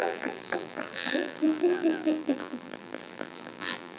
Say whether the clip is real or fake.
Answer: fake